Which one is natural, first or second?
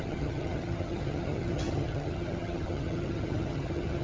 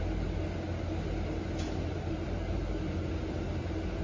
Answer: second